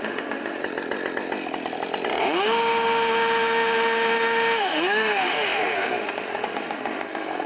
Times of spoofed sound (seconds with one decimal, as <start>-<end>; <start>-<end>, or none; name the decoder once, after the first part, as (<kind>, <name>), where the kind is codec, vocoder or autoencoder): 0.0-0.6 (autoencoder, DAC-VAE); 2.2-7.5